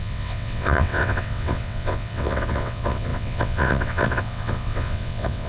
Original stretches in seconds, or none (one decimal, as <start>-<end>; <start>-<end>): none